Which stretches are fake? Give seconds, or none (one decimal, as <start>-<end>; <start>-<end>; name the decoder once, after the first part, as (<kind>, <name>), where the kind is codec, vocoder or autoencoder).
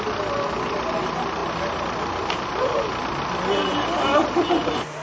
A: none